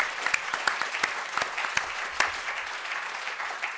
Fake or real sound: real